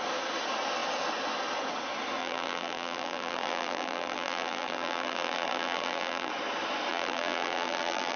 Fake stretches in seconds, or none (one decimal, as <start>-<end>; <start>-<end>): 2.2-6.3; 6.9-8.2